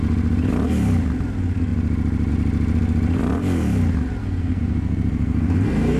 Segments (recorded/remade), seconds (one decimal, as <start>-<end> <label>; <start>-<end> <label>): 0.0-4.2 recorded; 4.2-6.0 remade